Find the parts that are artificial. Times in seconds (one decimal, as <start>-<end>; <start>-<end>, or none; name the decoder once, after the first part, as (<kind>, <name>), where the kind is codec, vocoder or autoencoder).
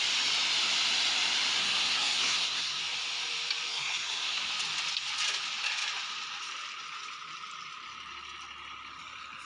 1.6-2.8 (codec, SNAC); 3.7-4.5